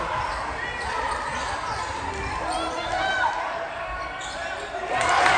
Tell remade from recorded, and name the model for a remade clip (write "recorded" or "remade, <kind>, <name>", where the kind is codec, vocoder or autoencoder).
recorded